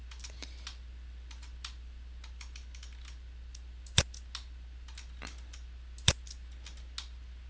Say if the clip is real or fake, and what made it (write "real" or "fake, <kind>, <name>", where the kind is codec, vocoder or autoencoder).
real